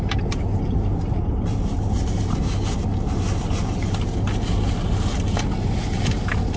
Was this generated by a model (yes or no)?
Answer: no